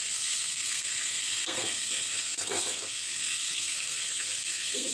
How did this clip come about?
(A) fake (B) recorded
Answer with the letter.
A